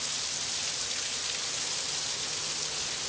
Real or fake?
real